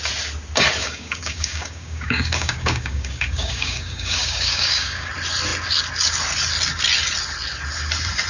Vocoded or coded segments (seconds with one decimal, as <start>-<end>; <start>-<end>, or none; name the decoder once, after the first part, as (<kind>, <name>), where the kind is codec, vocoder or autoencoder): 0.8-5.1 (codec, DAC)